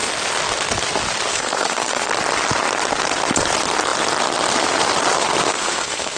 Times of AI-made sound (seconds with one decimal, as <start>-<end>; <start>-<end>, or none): 1.3-2.1; 5.5-6.2